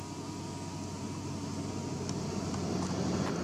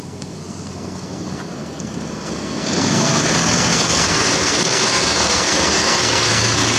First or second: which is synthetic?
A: second